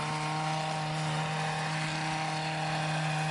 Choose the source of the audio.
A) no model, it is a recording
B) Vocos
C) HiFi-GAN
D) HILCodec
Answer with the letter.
A